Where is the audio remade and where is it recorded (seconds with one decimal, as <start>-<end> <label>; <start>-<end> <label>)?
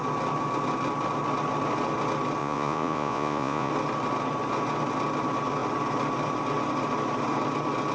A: 0.0-2.4 recorded; 2.4-3.7 remade; 3.7-7.9 recorded